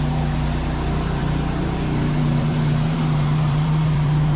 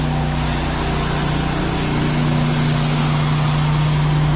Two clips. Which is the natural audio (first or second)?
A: second